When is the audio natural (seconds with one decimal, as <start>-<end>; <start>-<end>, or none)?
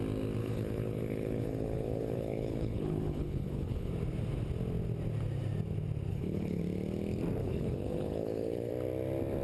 0.0-0.4; 3.9-6.1; 6.6-7.4; 8.7-9.4